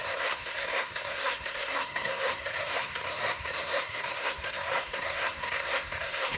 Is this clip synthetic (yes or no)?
yes